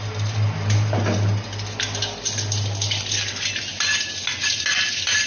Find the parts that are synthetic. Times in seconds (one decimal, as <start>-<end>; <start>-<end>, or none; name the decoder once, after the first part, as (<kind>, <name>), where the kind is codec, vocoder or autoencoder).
none